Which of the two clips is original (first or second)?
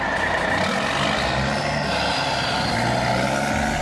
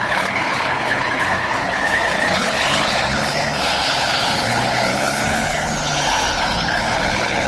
first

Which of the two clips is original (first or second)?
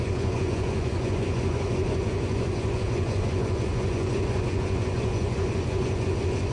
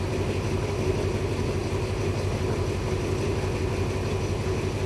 second